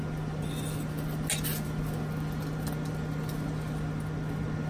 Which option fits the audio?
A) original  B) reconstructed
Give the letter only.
A